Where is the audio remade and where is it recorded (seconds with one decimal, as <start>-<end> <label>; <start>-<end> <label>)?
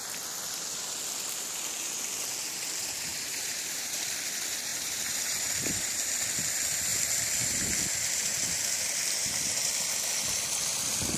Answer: 0.0-3.1 recorded; 3.1-4.0 remade; 4.0-4.7 recorded; 4.7-5.5 remade; 5.5-11.2 recorded